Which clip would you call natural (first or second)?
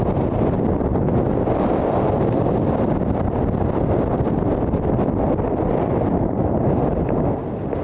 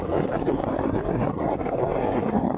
first